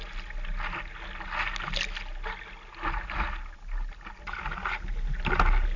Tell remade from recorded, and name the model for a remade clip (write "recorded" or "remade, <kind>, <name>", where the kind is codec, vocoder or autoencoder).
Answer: recorded